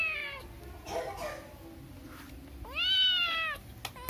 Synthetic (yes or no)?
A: no